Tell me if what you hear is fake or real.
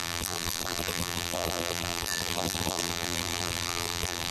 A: fake